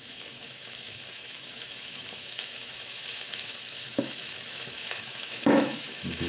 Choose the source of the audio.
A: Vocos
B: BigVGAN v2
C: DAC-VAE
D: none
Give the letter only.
C